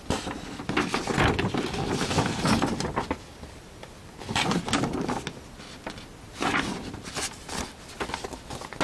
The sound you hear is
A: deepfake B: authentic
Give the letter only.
B